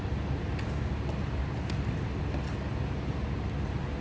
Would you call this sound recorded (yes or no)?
yes